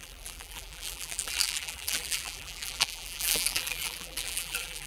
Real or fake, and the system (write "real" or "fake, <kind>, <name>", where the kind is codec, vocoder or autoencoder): fake, vocoder, BigVGAN v2